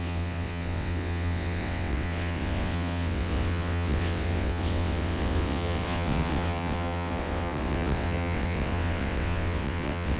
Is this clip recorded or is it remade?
remade